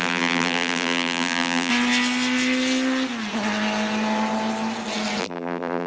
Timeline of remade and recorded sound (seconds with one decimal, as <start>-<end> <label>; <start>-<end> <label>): 0.0-1.7 remade; 1.7-5.2 recorded; 5.2-5.9 remade